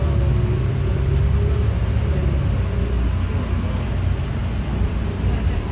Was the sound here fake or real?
real